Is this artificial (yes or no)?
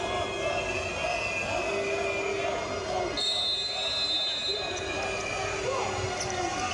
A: no